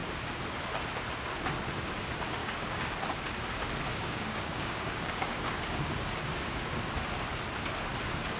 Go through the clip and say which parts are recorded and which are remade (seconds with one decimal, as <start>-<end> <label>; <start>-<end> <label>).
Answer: 0.0-2.4 recorded; 2.4-2.9 remade; 2.9-3.9 recorded; 3.9-6.8 remade; 6.8-8.4 recorded